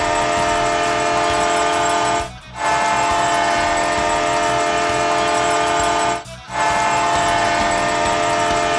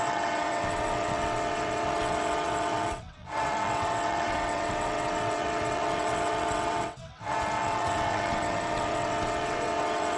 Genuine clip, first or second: first